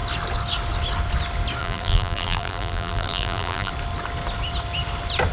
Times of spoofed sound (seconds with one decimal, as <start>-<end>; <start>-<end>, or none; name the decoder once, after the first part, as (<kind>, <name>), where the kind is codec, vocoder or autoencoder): 1.6-3.7 (vocoder, BigVGAN v2)